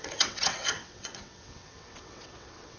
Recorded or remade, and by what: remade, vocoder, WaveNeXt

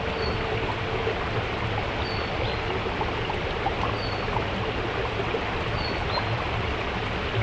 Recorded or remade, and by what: recorded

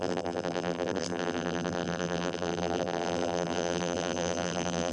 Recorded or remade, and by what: remade, vocoder, BigVGAN v2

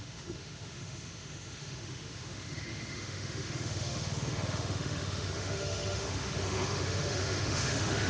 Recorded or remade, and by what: remade, autoencoder, DAC-VAE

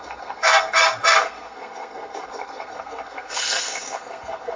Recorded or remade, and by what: remade, codec, SNAC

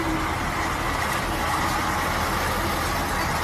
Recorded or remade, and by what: recorded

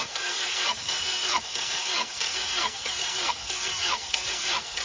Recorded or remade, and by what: remade, codec, SNAC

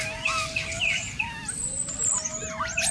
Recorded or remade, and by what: recorded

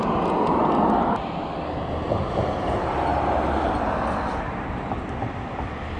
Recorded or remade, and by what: recorded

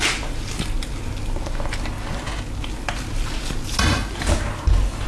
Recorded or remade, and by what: recorded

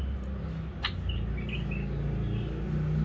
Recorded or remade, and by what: recorded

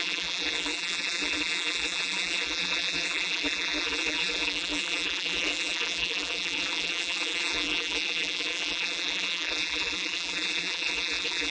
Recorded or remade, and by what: remade, vocoder, BigVGAN v2